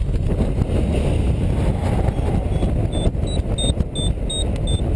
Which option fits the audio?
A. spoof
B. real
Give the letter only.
B